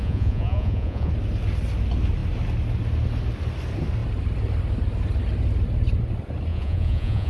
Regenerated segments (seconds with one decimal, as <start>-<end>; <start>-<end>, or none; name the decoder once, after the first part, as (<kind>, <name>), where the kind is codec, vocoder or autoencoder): 0.0-1.1 (vocoder, Vocos); 6.5-7.3